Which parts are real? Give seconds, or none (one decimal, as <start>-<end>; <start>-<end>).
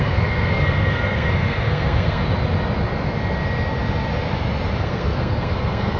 2.2-4.8